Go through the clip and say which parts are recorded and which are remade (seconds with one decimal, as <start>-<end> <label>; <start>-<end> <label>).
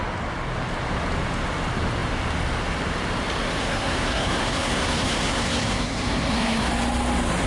0.0-3.6 recorded; 3.6-6.7 remade; 6.7-7.5 recorded